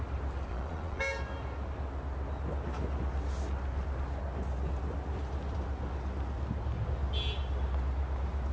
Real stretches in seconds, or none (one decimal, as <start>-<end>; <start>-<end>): 0.0-0.5; 1.0-8.5